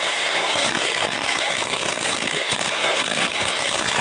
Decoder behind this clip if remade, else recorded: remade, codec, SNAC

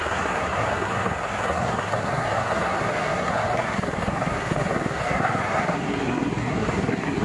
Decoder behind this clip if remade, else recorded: remade, codec, SNAC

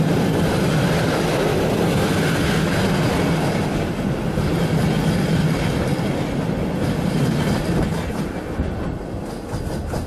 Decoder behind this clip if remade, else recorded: recorded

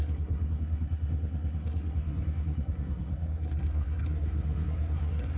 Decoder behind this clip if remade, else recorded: remade, codec, SNAC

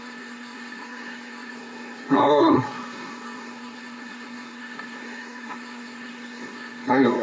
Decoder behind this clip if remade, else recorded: remade, codec, SNAC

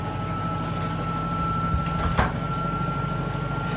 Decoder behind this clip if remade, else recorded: recorded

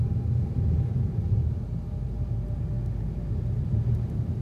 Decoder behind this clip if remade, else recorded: recorded